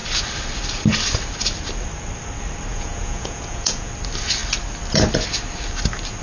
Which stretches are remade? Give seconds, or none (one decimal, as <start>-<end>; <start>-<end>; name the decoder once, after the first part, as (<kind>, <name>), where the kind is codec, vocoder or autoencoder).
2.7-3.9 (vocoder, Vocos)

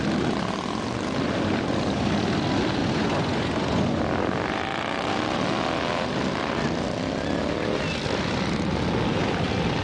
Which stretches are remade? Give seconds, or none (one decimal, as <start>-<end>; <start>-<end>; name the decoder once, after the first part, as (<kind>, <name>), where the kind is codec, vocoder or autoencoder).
2.8-4.0 (vocoder, Vocos)

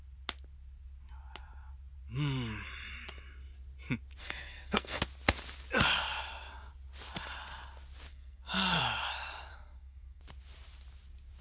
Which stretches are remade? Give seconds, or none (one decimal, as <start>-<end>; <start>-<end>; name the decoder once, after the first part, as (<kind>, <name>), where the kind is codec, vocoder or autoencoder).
4.2-5.0 (codec, SNAC); 8.1-8.8; 9.5-10.2

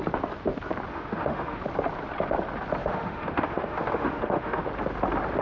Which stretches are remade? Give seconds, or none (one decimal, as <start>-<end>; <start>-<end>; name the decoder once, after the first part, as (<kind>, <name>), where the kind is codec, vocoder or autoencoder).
0.9-1.6 (autoencoder, DAC-VAE); 2.8-4.6

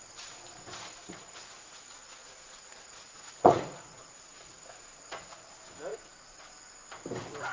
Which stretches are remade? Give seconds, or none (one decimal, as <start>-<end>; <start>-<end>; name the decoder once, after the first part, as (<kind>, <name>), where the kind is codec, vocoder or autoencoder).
1.0-5.5 (vocoder, Vocos); 5.9-6.5

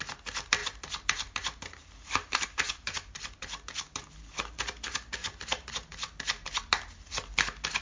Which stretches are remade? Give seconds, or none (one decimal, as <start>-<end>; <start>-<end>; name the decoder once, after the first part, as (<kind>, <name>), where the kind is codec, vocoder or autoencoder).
0.6-4.1 (vocoder, BigVGAN v2); 5.2-5.7

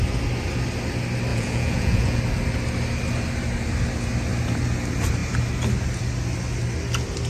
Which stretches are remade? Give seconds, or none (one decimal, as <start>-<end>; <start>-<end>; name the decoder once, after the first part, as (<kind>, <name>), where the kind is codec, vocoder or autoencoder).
1.3-2.2 (vocoder, Vocos)

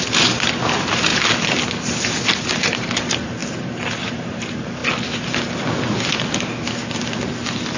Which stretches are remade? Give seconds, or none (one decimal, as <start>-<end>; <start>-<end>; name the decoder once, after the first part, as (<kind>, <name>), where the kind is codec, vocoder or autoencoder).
0.0-1.1 (vocoder, BigVGAN v2); 2.6-4.8